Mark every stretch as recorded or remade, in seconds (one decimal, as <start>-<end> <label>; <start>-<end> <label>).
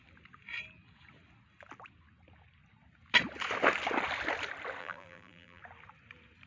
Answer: 0.0-4.8 recorded; 4.8-5.6 remade; 5.6-6.5 recorded